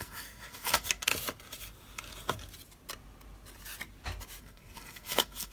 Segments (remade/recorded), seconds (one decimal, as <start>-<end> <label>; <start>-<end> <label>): 0.0-1.1 remade; 1.1-4.4 recorded; 4.4-5.5 remade